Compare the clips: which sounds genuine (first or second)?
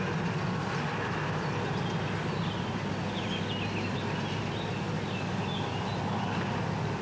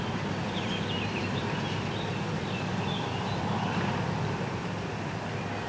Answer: first